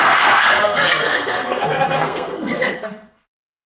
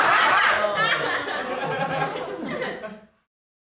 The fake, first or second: first